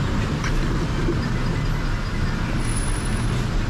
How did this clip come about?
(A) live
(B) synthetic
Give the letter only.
A